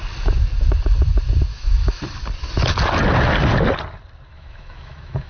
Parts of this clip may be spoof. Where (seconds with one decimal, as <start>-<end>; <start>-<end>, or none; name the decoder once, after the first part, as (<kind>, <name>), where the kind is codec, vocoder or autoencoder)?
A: 1.5-2.0 (autoencoder, DAC-VAE); 4.3-5.3